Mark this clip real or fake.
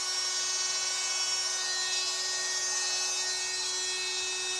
real